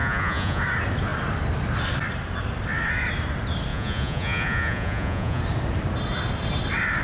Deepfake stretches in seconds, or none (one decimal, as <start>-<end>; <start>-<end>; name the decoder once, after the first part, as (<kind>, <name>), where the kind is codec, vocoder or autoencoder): 0.0-0.6 (vocoder, Vocos); 3.7-5.4